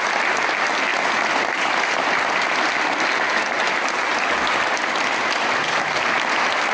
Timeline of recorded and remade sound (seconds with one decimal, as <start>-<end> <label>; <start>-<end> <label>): 0.0-6.7 recorded